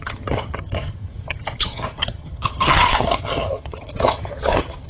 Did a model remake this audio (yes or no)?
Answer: yes